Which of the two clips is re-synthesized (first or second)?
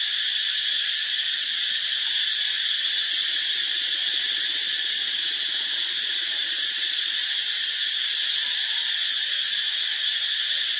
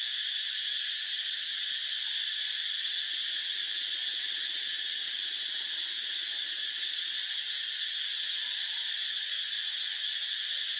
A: first